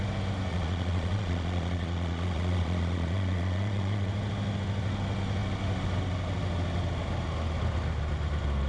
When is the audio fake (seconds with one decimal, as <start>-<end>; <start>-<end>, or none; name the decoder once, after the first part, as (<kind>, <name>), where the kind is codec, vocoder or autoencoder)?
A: 0.5-4.1 (vocoder, Vocos)